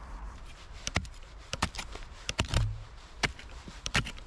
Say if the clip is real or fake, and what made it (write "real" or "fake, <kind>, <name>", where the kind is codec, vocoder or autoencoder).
fake, vocoder, BigVGAN v2